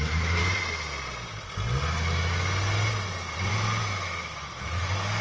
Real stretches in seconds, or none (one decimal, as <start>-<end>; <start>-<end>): 0.4-3.5